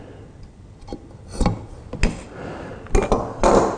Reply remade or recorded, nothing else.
recorded